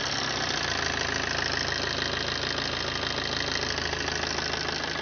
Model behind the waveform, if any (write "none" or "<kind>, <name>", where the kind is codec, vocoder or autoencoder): none